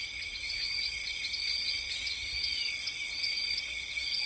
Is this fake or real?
real